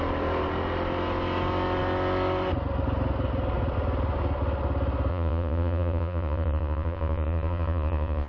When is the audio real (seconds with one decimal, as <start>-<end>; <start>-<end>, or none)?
0.0-5.1